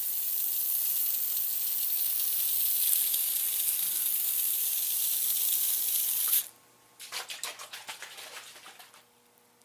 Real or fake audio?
real